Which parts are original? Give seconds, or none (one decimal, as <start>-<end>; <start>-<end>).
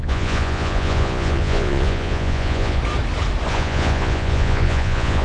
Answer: 2.8-3.5